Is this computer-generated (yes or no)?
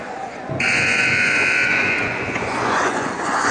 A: yes